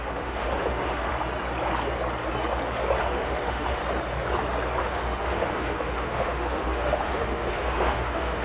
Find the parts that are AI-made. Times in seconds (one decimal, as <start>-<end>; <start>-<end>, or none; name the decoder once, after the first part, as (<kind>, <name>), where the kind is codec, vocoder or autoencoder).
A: 0.0-1.1 (autoencoder, DAC-VAE); 3.0-3.8; 4.8-8.4